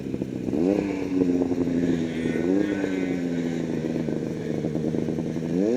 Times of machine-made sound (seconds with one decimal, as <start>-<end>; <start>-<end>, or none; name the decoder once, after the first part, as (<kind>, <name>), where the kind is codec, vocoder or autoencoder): 1.1-2.5 (vocoder, BigVGAN v2); 3.8-4.5